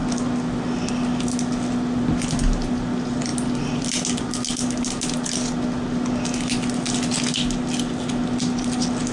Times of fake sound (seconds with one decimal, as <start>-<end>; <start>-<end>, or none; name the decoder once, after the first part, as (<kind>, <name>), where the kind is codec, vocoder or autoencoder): none